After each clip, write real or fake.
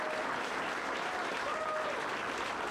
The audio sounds real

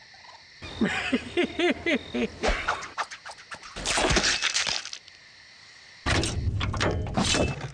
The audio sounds real